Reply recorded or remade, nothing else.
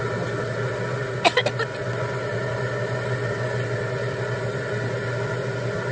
recorded